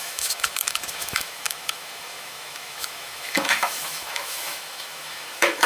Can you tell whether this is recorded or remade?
remade